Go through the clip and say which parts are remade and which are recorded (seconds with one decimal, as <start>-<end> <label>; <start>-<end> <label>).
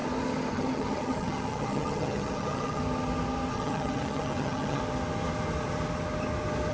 0.0-0.5 recorded; 0.5-2.8 remade; 2.8-3.5 recorded; 3.5-4.8 remade; 4.8-6.7 recorded